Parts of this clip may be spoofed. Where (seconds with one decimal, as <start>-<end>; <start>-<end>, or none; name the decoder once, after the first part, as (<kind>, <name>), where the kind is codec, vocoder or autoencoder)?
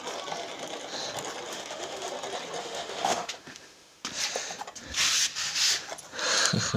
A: 1.5-2.1 (autoencoder, DAC-VAE); 2.6-4.0